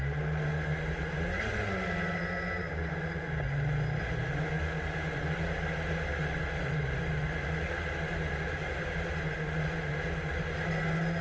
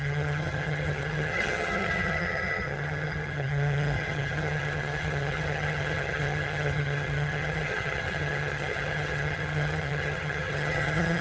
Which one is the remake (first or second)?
second